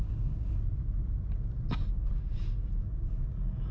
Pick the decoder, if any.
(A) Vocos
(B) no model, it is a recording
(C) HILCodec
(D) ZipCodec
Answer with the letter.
B